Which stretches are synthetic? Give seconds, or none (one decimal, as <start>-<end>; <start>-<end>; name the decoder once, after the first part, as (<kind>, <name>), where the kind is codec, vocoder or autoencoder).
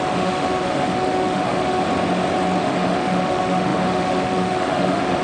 0.0-1.8 (autoencoder, DAC-VAE); 2.6-5.2